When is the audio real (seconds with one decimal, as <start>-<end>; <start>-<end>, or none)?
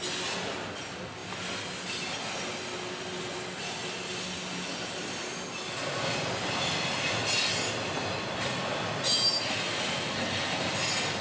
0.0-11.2